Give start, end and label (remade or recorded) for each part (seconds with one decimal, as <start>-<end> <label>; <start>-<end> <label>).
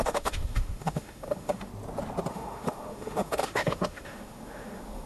0.0-1.7 remade; 1.7-2.3 recorded; 2.3-5.1 remade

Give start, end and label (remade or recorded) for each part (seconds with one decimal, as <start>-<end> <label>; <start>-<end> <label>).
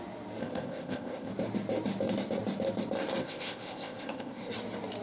0.0-0.4 recorded; 0.4-1.3 remade; 1.3-3.2 recorded; 3.2-4.5 remade; 4.5-5.0 recorded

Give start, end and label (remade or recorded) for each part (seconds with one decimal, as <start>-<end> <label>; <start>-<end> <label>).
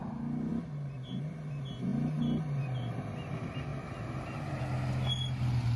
0.0-3.7 recorded; 3.7-4.6 remade; 4.6-5.8 recorded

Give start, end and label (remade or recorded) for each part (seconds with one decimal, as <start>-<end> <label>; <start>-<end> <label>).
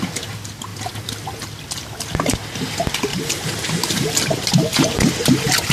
0.0-3.1 recorded; 3.1-5.7 remade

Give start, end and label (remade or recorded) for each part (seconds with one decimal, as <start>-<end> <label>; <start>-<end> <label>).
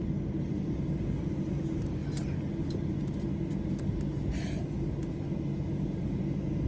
0.0-6.7 recorded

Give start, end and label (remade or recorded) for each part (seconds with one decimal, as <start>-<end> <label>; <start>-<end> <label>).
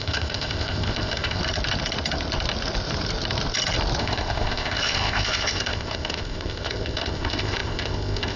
0.0-1.4 remade; 1.4-4.0 recorded; 4.0-8.4 remade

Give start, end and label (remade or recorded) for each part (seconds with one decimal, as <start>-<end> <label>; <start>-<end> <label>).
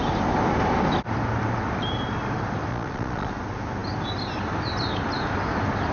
0.0-2.7 recorded; 2.7-3.3 remade; 3.3-5.9 recorded